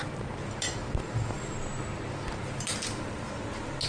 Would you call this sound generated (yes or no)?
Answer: no